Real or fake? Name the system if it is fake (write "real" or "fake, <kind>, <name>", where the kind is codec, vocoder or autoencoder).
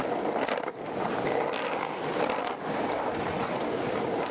real